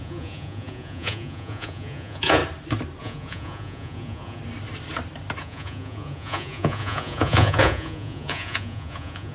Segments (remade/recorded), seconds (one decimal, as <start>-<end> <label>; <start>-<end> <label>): 0.0-2.4 remade; 2.4-3.0 recorded; 3.0-4.4 remade; 4.4-5.4 recorded; 5.4-9.3 remade